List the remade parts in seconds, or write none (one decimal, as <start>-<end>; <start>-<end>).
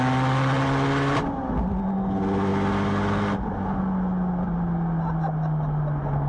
none